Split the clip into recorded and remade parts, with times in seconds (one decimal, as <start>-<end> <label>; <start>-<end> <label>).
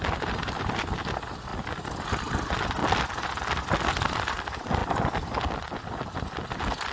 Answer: 0.0-2.8 remade; 2.8-3.9 recorded; 3.9-4.8 remade; 4.8-5.8 recorded; 5.8-6.9 remade